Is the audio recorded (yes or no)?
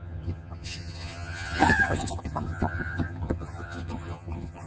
no